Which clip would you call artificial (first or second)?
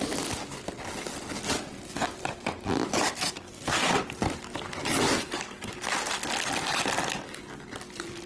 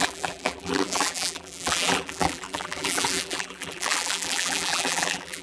second